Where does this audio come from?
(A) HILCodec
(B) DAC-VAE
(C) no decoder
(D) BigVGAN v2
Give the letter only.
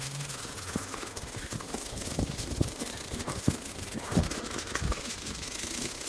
B